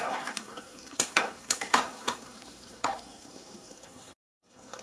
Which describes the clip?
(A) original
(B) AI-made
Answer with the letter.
B